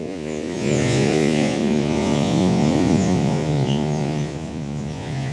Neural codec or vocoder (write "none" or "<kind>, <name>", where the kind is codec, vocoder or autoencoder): vocoder, Vocos